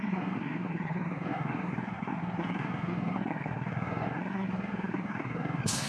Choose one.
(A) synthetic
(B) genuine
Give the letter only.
A